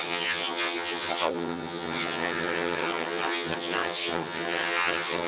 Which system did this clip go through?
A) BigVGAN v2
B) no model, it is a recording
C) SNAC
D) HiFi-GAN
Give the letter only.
D